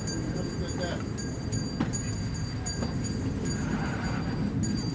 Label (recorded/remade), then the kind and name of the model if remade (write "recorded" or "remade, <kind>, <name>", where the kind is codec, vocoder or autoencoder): recorded